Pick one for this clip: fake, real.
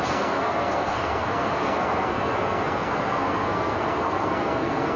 fake